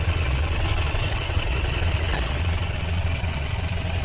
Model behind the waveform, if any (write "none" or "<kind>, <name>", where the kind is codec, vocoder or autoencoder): vocoder, Vocos